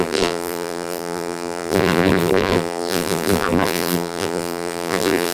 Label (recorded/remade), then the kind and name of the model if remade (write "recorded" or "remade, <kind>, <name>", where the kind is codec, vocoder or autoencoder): remade, vocoder, BigVGAN v2